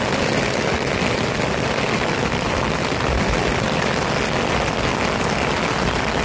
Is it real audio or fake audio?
real